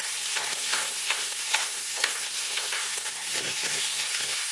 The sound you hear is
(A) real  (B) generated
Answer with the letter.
B